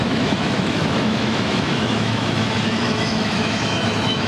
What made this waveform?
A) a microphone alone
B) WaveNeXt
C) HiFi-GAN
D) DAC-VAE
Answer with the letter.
D